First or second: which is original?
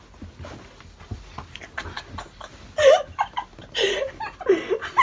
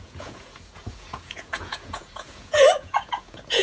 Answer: first